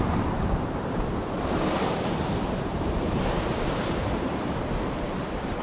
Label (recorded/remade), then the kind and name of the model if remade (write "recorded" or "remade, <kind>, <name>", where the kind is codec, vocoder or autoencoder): remade, vocoder, BigVGAN v2